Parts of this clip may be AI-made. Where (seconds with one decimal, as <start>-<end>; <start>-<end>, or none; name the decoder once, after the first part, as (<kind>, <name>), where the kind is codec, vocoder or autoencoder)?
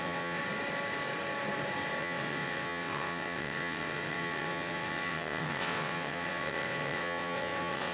0.0-0.4 (vocoder, WaveNeXt); 2.0-7.9